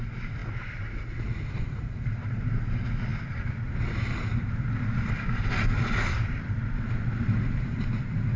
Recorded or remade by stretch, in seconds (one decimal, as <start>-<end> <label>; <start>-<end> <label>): 0.0-3.1 recorded; 3.1-3.7 remade; 3.7-8.4 recorded